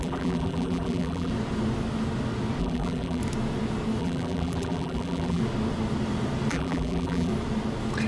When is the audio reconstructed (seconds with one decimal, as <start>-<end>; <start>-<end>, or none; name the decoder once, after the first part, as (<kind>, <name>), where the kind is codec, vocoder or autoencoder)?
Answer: 0.0-1.3 (vocoder, BigVGAN v2); 2.6-3.2; 4.0-5.4; 6.5-7.3